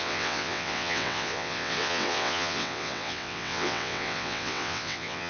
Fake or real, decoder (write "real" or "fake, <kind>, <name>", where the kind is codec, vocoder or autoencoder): fake, vocoder, WaveNeXt